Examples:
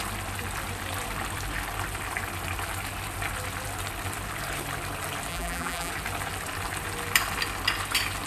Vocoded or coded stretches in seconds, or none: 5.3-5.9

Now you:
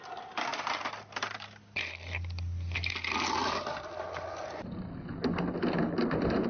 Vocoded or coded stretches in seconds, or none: 0.5-1.8; 3.4-3.9

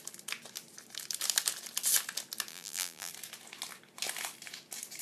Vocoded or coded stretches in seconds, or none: 2.5-3.1

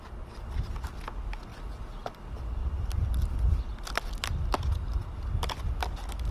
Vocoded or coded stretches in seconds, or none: 1.5-4.3